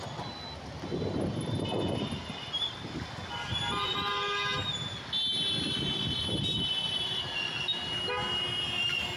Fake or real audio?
real